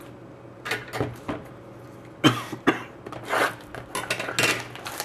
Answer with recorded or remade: recorded